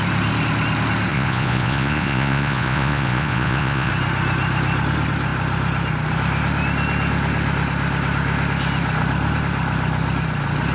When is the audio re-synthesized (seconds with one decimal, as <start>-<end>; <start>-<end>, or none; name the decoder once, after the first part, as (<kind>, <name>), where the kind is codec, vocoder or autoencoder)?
1.1-3.9 (vocoder, Vocos)